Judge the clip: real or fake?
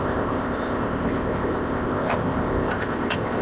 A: fake